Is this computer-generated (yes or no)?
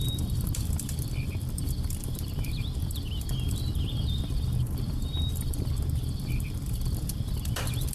yes